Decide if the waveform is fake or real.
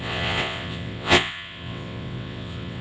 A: fake